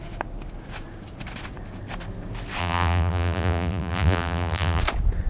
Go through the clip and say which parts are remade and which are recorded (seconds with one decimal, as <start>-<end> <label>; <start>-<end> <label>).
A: 0.0-2.6 recorded; 2.6-4.8 remade; 4.8-5.3 recorded